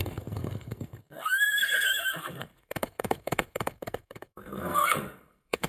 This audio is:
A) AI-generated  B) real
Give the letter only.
A